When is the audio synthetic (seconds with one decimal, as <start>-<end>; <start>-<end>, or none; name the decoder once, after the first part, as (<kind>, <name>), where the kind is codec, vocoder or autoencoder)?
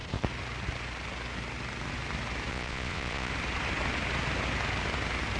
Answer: 2.5-3.3 (vocoder, Vocos)